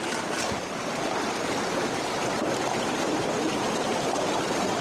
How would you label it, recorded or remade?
remade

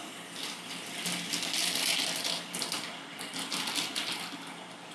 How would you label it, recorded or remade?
recorded